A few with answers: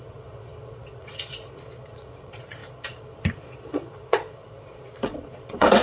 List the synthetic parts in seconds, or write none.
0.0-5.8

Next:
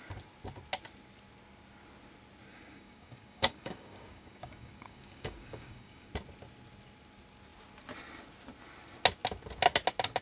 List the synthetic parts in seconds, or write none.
2.5-6.1

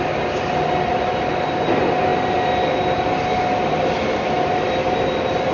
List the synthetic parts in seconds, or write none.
none

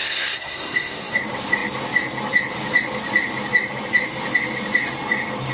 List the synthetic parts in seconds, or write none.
0.0-1.2

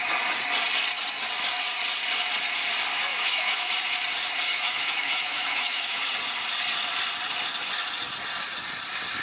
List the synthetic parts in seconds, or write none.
3.1-3.7; 4.5-6.0

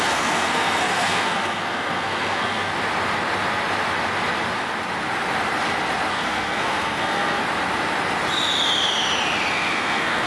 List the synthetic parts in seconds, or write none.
0.0-2.7; 6.1-7.4; 9.5-10.3

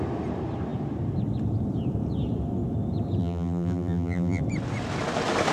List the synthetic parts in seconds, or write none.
3.2-4.4

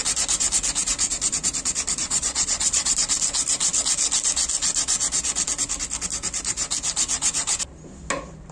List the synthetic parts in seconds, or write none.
2.0-2.9